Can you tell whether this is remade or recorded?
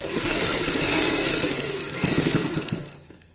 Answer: remade